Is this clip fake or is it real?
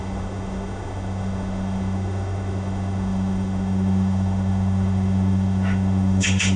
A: fake